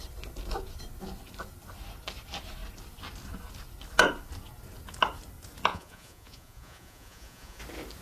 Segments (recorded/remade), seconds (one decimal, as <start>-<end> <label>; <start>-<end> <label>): 0.0-5.7 recorded; 5.7-7.6 remade; 7.6-8.0 recorded